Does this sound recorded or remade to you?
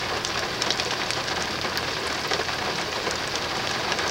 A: recorded